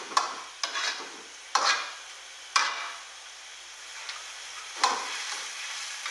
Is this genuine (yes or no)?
yes